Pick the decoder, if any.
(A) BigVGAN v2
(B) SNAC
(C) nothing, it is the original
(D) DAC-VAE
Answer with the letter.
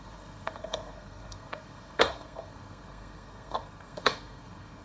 B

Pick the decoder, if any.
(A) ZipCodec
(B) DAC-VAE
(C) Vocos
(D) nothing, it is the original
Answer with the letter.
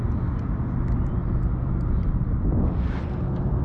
D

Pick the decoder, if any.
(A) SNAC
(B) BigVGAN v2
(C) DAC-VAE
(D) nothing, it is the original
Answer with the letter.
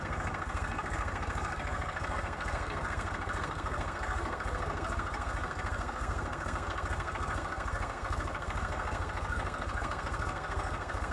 A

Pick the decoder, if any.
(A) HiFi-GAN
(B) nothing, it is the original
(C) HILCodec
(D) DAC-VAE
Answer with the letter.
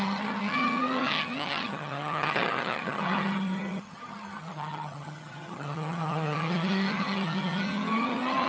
A